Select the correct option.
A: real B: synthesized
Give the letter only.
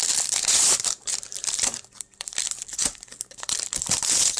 B